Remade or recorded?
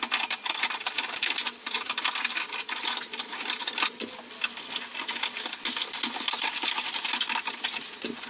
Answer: recorded